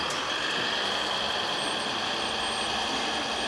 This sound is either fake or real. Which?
real